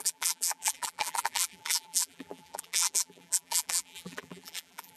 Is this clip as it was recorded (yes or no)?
no